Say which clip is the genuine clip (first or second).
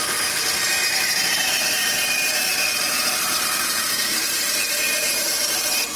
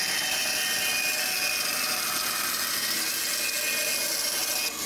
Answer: second